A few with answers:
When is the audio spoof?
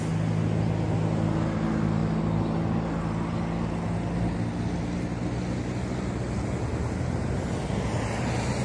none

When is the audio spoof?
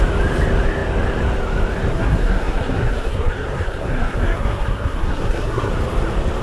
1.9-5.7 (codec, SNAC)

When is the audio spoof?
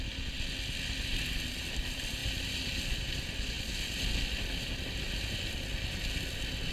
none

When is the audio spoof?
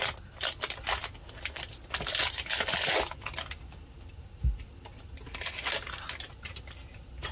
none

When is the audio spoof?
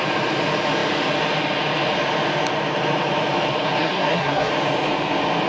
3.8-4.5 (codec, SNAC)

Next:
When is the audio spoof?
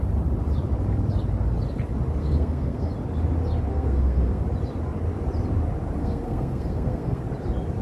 2.2-2.9 (codec, SNAC); 3.7-4.4; 6.0-7.2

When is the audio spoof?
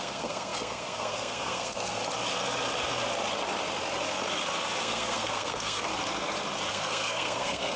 0.0-2.0 (codec, SNAC); 4.8-5.9; 6.7-7.8